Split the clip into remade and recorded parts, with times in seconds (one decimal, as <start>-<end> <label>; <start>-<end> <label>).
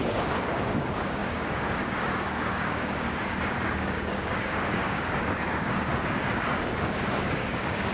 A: 0.0-7.9 remade